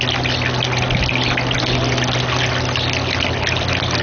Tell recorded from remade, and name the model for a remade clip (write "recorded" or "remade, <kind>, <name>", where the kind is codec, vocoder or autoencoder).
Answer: recorded